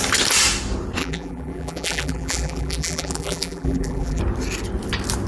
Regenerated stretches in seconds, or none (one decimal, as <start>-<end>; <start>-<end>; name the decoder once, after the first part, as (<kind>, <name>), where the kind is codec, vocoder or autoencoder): 1.0-4.2 (vocoder, BigVGAN v2)